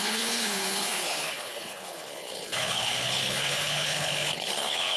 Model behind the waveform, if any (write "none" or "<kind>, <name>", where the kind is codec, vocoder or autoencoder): codec, HILCodec